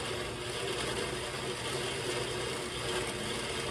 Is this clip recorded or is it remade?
recorded